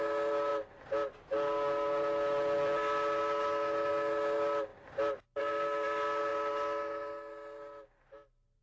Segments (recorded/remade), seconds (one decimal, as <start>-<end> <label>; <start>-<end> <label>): 0.0-8.6 recorded